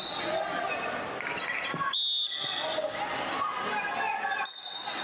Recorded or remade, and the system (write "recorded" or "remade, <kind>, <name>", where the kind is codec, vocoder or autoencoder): recorded